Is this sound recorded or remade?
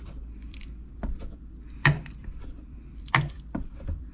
remade